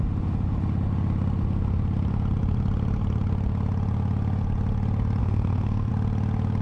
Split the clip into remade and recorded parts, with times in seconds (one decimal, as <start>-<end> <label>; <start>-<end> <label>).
0.0-5.2 recorded; 5.2-5.9 remade; 5.9-6.6 recorded